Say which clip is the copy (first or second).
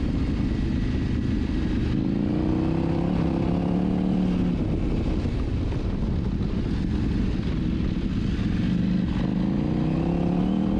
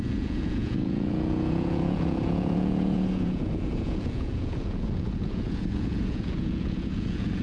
second